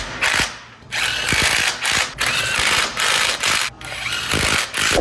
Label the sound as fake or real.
real